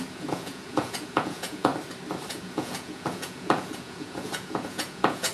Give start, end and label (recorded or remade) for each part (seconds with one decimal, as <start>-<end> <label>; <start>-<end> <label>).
0.0-1.7 remade; 1.7-2.3 recorded; 2.3-5.3 remade